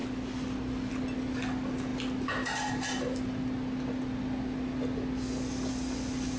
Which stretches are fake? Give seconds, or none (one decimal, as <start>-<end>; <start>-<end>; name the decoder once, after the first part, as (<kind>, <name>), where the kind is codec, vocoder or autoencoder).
none

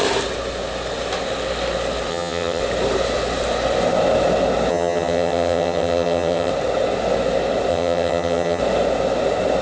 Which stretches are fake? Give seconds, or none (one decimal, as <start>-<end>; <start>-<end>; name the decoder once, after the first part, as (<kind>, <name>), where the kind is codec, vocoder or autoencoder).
2.1-2.6 (vocoder, HiFi-GAN); 4.7-6.5; 7.7-8.6